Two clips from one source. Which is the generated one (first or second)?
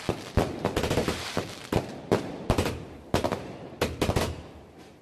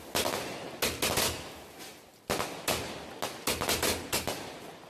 first